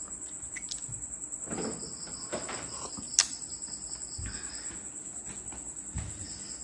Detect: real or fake real